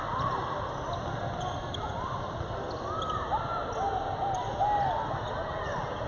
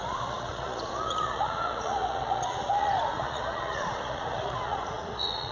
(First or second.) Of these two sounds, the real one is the first